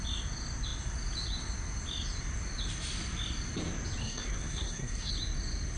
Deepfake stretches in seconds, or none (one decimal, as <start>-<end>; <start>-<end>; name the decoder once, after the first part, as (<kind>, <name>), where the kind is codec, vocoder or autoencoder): 4.0-5.1 (codec, SNAC)